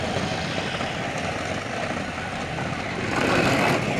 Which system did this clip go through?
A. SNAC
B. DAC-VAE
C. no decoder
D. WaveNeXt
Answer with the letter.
C